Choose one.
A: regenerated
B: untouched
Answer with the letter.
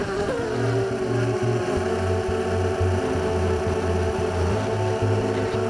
B